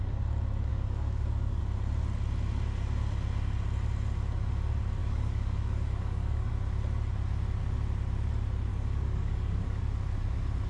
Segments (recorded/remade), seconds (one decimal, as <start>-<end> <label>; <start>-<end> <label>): 0.0-0.7 recorded; 0.7-1.6 remade; 1.6-5.0 recorded; 5.0-6.5 remade; 6.5-8.7 recorded; 8.7-9.8 remade; 9.8-10.7 recorded